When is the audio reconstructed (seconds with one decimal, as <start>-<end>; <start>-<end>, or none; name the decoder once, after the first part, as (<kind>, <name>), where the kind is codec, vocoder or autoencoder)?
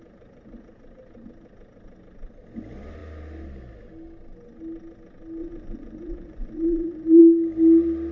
5.4-7.2 (vocoder, Vocos)